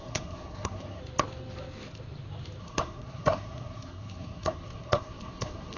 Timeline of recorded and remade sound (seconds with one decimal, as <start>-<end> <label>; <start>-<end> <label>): 0.0-1.0 remade; 1.0-2.6 recorded; 2.6-5.8 remade